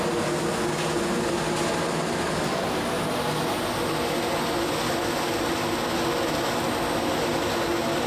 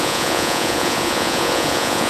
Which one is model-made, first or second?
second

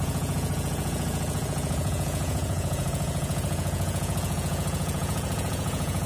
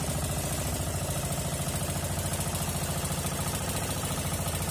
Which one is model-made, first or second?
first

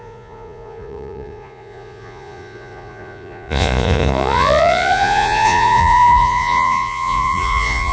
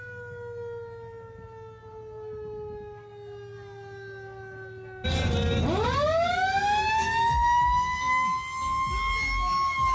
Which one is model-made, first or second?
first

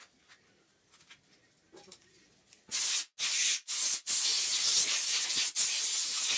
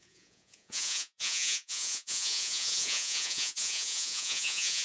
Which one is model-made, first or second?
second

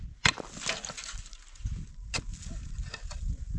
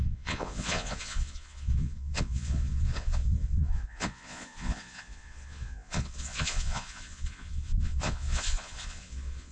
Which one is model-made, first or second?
second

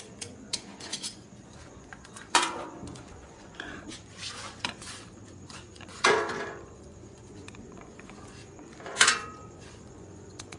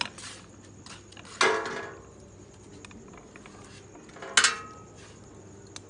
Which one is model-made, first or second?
first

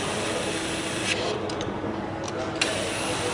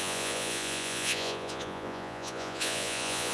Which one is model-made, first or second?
second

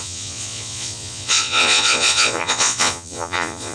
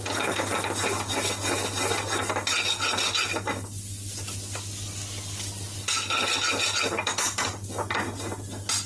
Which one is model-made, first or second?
first